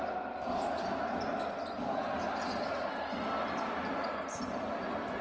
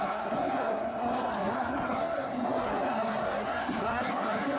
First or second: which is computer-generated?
second